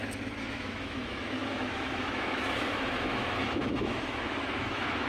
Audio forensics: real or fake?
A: fake